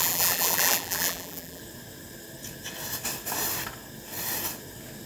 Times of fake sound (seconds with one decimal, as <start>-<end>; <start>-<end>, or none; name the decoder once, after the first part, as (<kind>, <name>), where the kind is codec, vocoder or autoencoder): 0.0-1.6 (vocoder, BigVGAN v2)